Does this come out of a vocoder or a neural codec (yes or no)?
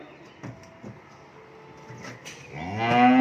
no